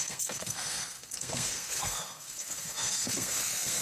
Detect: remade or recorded remade